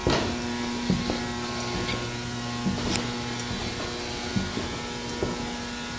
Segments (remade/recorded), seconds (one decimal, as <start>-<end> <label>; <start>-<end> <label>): 0.0-3.6 remade; 3.6-4.3 recorded; 4.3-5.2 remade; 5.2-6.0 recorded